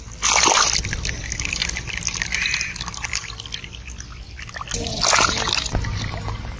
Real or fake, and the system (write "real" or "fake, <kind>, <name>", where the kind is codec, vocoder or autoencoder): real